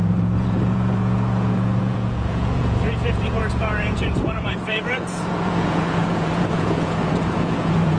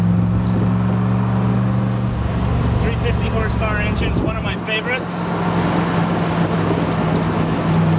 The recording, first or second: second